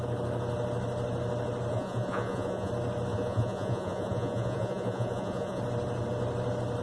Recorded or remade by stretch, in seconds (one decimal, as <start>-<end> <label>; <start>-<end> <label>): 0.0-1.7 recorded; 1.7-2.7 remade; 2.7-3.1 recorded; 3.1-5.6 remade; 5.6-6.8 recorded